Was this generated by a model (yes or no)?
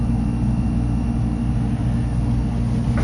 no